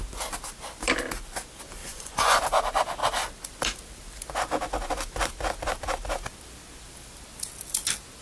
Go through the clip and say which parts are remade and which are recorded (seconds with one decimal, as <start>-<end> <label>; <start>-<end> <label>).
0.0-1.8 recorded; 1.8-2.4 remade; 2.4-8.2 recorded